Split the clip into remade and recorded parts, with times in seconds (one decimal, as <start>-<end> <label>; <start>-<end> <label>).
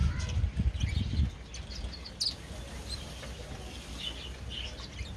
0.0-5.2 recorded